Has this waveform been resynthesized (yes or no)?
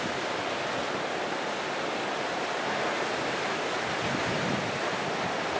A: no